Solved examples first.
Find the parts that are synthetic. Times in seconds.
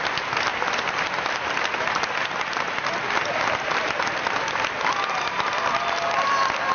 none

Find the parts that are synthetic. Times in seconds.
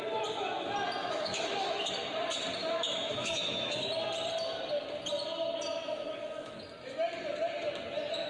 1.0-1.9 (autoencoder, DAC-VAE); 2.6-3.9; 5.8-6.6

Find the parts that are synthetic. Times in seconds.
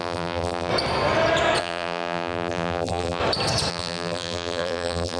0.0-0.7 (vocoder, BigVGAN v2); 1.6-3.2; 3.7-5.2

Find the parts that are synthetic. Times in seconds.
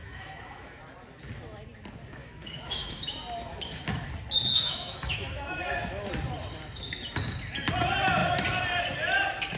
0.0-0.8 (autoencoder, DAC-VAE); 2.2-3.2; 4.5-6.1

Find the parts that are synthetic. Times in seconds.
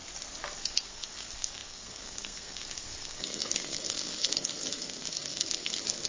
0.6-6.1 (codec, SNAC)